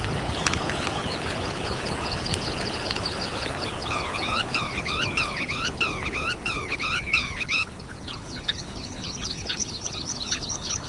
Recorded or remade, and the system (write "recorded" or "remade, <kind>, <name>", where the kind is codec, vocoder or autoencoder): remade, codec, HILCodec